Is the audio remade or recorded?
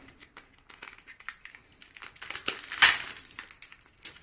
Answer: recorded